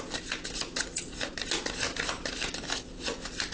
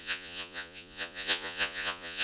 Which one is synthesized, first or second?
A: second